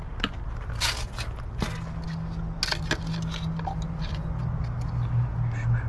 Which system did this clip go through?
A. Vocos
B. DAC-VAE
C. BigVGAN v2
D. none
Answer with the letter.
D